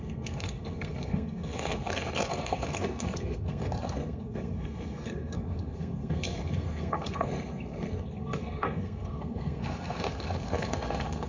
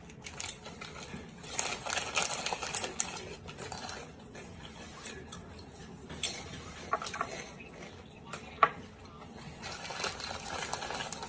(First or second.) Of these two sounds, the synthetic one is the first